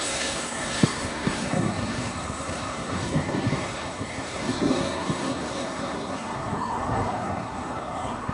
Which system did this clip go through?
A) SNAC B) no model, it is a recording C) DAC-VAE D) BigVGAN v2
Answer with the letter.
A